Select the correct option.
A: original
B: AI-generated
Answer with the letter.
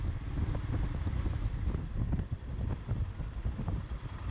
A